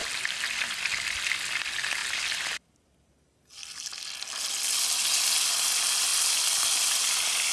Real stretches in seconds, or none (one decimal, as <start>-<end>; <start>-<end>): 0.0-7.5